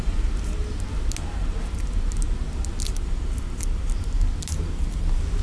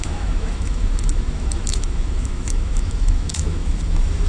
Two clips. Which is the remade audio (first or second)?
second